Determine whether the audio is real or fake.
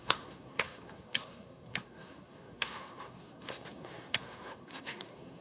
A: fake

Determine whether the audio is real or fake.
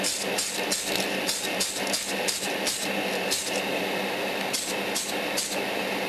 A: real